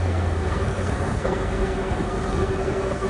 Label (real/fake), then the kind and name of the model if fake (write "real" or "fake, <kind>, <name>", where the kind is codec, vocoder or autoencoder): fake, codec, SNAC